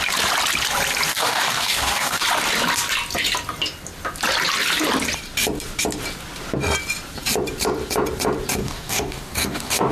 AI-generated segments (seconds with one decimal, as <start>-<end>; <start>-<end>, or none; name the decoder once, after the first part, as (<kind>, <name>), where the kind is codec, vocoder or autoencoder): 1.1-2.2 (codec, DAC); 8.6-9.9